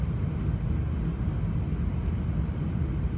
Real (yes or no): yes